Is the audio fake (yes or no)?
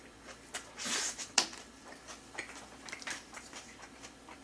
yes